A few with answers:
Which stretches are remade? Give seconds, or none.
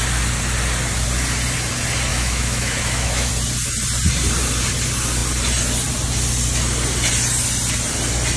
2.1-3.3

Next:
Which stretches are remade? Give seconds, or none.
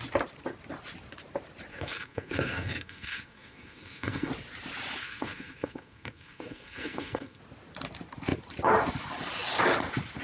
1.7-4.3; 5.0-7.4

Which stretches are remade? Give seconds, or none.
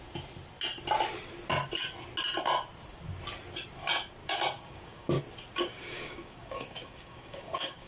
4.2-5.2; 5.7-7.9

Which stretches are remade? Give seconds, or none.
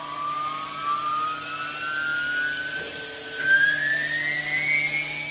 none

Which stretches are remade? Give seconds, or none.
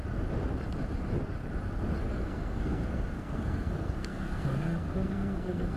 2.0-5.8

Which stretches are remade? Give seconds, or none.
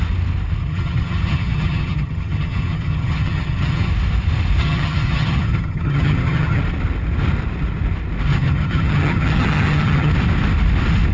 0.6-3.9; 4.6-6.6; 8.3-10.1